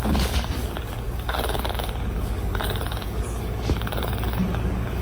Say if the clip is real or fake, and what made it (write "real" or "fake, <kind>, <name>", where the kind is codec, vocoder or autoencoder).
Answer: fake, codec, DAC